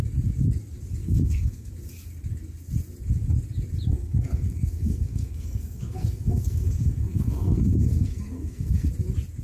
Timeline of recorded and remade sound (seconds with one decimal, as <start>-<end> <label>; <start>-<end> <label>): 0.0-1.0 recorded; 1.0-1.7 remade; 1.7-3.9 recorded; 3.9-8.9 remade; 8.9-9.4 recorded